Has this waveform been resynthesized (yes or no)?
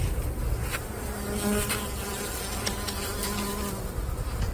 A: no